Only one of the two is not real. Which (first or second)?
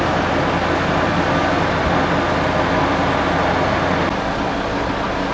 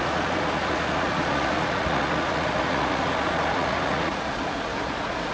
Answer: second